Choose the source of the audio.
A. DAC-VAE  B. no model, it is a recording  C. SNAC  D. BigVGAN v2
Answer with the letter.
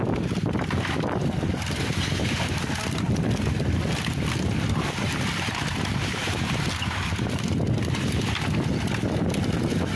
D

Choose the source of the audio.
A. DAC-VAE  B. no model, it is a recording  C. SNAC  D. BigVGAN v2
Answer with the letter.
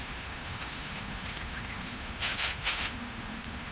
A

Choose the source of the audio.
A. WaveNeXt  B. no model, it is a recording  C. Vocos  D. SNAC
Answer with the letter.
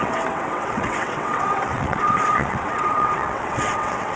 A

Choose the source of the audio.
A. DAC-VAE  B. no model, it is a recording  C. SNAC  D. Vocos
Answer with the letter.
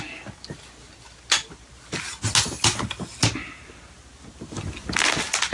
B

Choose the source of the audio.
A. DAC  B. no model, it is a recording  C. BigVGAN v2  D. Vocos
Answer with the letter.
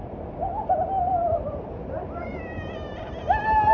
C